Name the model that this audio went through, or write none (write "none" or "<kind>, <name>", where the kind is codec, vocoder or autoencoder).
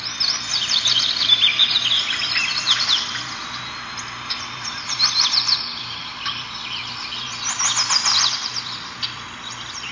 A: vocoder, BigVGAN v2